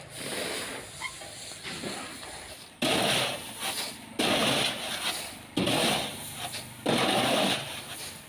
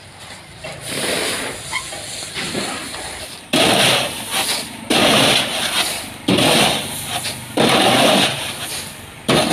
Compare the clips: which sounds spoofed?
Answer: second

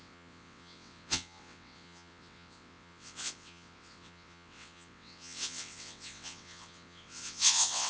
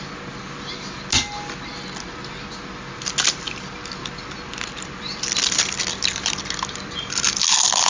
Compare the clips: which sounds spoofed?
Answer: first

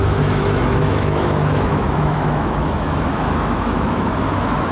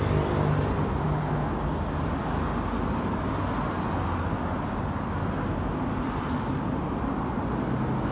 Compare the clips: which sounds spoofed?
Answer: first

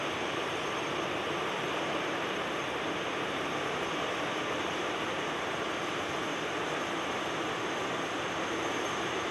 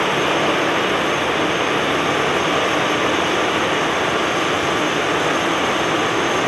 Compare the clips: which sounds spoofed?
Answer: first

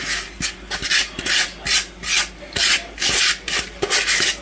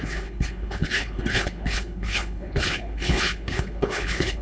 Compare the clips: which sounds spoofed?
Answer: second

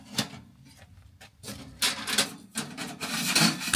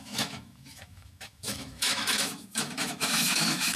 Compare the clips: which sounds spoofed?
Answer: second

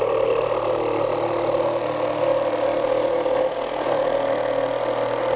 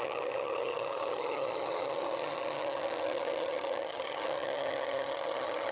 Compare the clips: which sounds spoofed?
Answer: second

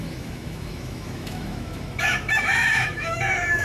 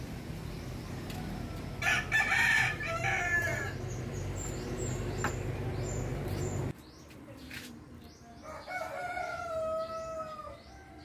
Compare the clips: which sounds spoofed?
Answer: first